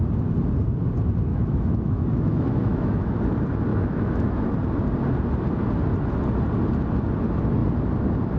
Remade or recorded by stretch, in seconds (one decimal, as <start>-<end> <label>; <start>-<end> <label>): 0.0-1.3 recorded; 1.3-3.1 remade; 3.1-3.7 recorded; 3.7-4.4 remade; 4.4-8.4 recorded